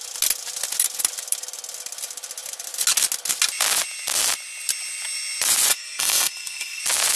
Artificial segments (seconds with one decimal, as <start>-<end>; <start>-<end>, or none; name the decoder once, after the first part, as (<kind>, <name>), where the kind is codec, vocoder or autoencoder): 5.7-6.8 (codec, SNAC)